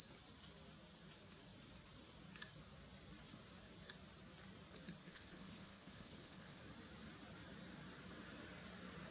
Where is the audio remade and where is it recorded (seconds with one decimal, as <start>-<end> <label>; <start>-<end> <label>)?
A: 0.0-5.0 recorded; 5.0-6.6 remade; 6.6-9.1 recorded